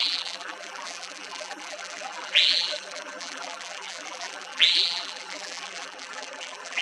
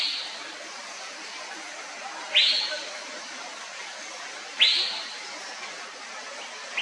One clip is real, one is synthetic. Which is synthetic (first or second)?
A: first